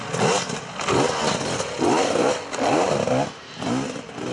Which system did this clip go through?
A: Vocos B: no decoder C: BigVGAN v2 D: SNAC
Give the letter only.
B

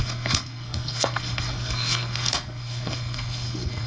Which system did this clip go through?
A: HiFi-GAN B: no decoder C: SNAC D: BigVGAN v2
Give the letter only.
C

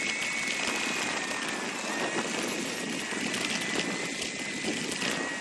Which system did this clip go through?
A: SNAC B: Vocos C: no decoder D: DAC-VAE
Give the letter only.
C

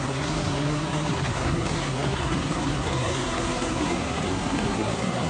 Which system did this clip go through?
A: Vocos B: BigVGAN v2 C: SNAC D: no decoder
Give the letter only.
C